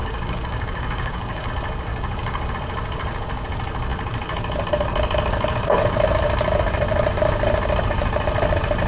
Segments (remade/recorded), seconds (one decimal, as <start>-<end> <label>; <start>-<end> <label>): 0.0-1.5 remade; 1.5-1.9 recorded; 1.9-2.5 remade; 2.5-8.9 recorded